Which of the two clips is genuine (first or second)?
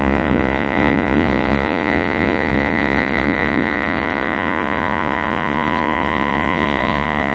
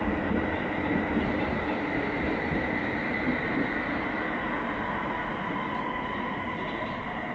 second